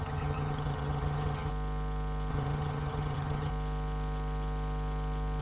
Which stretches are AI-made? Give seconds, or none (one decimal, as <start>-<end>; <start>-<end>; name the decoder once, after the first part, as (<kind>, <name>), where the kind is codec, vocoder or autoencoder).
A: 0.0-1.5 (vocoder, HiFi-GAN); 2.3-3.5